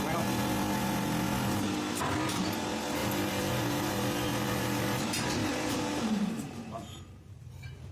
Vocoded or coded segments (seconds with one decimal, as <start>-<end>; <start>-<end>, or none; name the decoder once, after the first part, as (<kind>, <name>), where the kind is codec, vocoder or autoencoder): 3.0-7.5 (vocoder, BigVGAN v2)